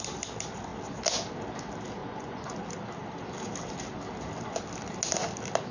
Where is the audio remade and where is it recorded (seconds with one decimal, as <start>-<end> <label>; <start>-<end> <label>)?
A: 0.0-2.0 recorded; 2.0-2.5 remade; 2.5-5.7 recorded